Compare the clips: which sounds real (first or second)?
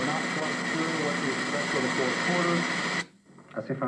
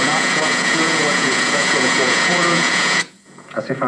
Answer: first